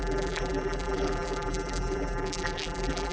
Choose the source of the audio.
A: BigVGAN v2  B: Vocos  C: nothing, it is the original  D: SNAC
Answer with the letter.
A